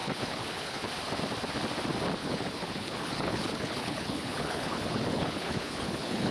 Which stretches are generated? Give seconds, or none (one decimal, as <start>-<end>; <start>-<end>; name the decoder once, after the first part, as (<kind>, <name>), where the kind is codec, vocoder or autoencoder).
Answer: 0.0-0.9 (codec, HILCodec); 2.2-6.3